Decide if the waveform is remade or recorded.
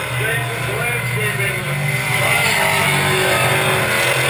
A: recorded